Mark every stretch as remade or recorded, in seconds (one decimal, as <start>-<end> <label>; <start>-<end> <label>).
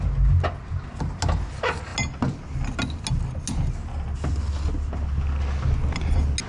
0.0-6.5 recorded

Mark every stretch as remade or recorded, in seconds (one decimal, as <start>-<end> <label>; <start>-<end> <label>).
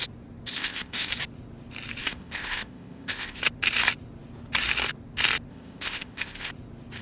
0.0-0.5 recorded; 0.5-1.1 remade; 1.1-2.0 recorded; 2.0-3.4 remade; 3.4-5.5 recorded; 5.5-6.5 remade; 6.5-7.0 recorded